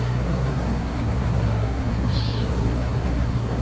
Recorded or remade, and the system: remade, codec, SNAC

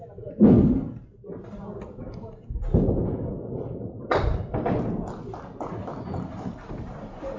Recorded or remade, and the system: recorded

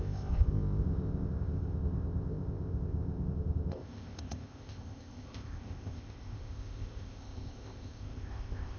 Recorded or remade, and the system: remade, codec, ZipCodec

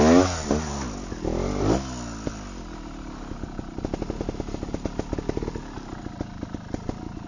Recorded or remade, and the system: recorded